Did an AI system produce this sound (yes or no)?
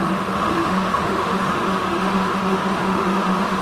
yes